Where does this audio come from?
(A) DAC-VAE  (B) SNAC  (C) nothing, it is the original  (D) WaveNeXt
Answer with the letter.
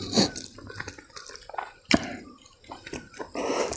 C